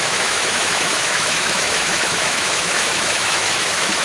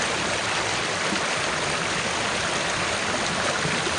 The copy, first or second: first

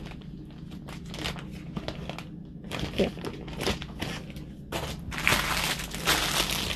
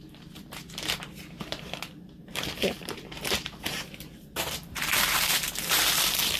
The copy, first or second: second